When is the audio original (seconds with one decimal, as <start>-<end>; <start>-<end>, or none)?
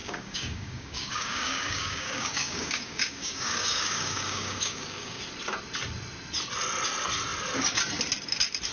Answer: 5.2-8.7